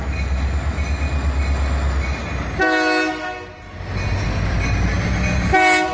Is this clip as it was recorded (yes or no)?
yes